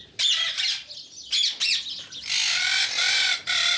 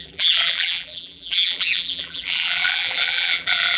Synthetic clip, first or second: second